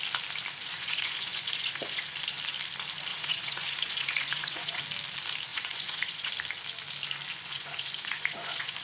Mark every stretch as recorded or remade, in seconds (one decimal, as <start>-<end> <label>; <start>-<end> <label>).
0.0-0.6 recorded; 0.6-2.0 remade; 2.0-3.1 recorded; 3.1-4.8 remade; 4.8-5.5 recorded; 5.5-6.3 remade; 6.3-7.3 recorded; 7.3-8.8 remade